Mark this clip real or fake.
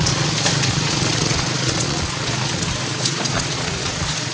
fake